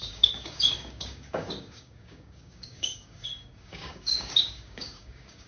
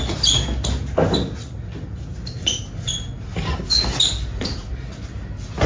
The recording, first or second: second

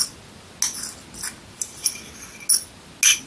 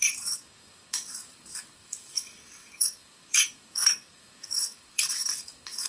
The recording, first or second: first